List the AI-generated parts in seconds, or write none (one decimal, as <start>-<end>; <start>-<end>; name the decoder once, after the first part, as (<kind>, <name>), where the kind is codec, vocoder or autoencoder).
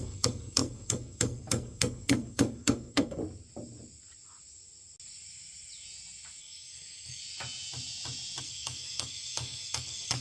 0.0-3.2 (codec, SNAC); 6.4-7.2; 8.4-10.2